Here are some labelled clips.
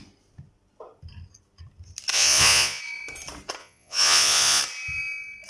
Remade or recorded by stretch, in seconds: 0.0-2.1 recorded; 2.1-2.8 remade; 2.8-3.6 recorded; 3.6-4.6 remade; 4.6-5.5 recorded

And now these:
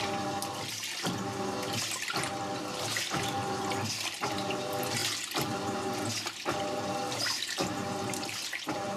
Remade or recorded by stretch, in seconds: 0.0-9.0 recorded

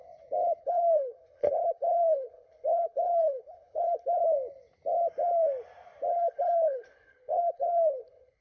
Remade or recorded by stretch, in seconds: 0.0-0.6 recorded; 0.6-4.2 remade; 4.2-6.1 recorded; 6.1-8.4 remade

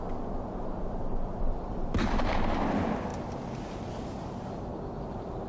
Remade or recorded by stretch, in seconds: 0.0-5.5 recorded

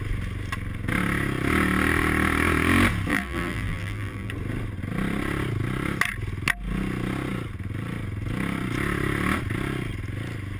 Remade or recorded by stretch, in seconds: 0.0-3.1 recorded; 3.1-4.3 remade; 4.3-10.6 recorded

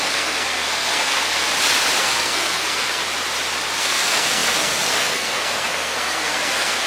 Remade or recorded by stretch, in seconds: 0.0-1.5 remade; 1.5-2.0 recorded; 2.0-3.0 remade; 3.0-3.8 recorded; 3.8-6.9 remade

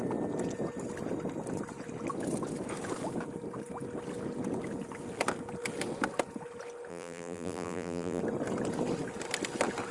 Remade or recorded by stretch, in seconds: 0.0-6.9 recorded; 6.9-8.2 remade; 8.2-9.9 recorded

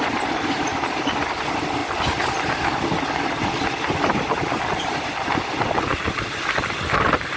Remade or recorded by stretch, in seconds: 0.0-7.4 recorded